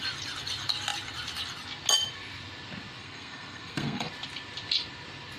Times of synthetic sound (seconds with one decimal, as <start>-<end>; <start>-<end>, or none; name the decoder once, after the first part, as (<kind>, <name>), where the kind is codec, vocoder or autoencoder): 3.0-4.1 (codec, SNAC)

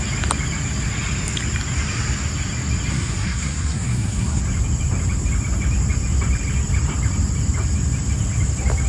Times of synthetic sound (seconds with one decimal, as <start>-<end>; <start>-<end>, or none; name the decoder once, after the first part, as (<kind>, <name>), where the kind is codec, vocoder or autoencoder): 2.9-4.4 (codec, SNAC)

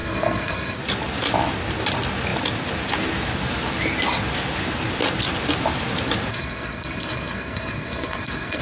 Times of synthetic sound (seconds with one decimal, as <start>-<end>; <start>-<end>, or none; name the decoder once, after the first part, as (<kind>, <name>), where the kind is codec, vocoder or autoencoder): 0.0-0.8 (codec, SNAC); 6.3-8.6

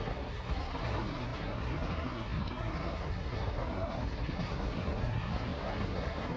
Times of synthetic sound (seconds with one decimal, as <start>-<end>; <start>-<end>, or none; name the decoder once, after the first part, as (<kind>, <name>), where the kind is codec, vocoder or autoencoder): 0.0-6.4 (codec, SNAC)

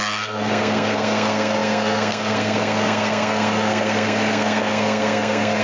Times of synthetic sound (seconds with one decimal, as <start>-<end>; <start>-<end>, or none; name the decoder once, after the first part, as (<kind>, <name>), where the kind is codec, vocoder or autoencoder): 0.0-5.6 (codec, SNAC)

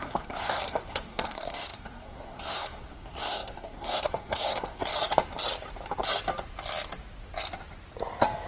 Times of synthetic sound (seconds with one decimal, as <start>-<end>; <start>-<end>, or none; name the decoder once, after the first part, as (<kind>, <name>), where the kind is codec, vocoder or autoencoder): 0.0-4.9 (codec, SNAC)